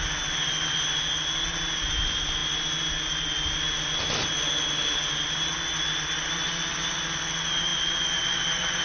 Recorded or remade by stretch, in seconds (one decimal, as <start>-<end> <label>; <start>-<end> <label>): 0.0-8.8 recorded